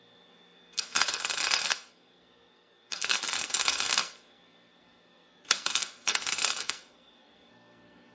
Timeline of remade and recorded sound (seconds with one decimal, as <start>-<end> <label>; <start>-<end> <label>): 0.0-8.1 remade